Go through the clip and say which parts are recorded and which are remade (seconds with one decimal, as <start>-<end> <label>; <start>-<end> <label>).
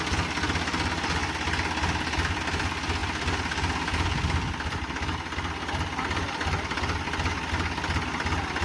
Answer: 0.0-8.6 recorded